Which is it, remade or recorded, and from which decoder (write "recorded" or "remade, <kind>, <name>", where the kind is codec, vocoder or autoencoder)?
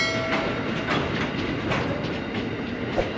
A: recorded